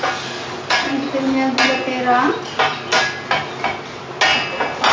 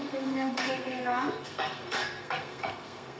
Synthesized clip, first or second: second